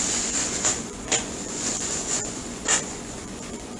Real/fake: fake